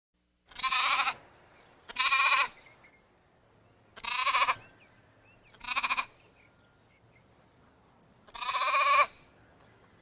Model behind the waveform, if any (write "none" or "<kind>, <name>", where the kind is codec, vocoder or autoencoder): none